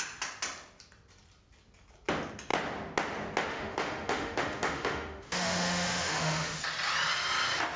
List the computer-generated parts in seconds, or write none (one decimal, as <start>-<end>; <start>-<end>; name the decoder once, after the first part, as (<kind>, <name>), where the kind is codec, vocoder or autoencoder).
3.5-6.6 (autoencoder, DAC-VAE)

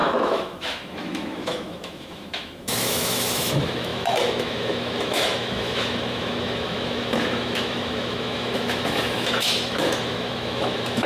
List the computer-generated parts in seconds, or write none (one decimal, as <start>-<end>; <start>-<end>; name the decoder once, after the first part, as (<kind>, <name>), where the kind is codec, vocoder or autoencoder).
0.0-11.1 (autoencoder, DAC-VAE)